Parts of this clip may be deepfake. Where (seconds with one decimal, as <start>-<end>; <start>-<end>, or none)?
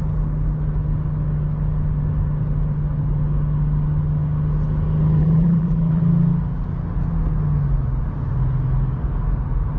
5.2-6.0